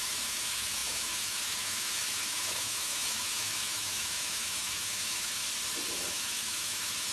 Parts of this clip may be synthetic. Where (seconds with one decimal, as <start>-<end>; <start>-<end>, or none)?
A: 0.0-5.4; 6.1-7.1